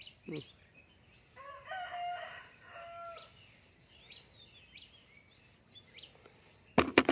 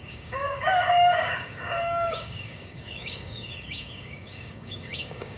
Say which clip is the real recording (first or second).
first